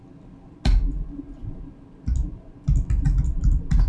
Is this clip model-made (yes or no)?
no